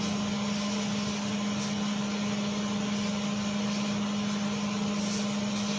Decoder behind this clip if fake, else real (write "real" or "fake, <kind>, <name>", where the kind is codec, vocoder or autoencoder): real